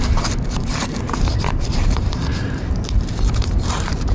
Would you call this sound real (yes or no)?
no